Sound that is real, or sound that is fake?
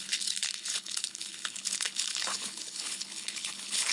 fake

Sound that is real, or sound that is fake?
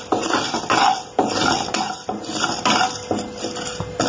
real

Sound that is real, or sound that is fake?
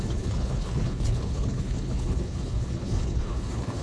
fake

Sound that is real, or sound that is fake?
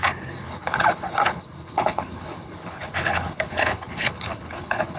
fake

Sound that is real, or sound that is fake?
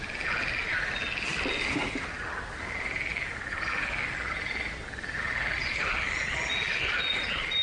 real